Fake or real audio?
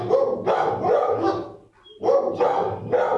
real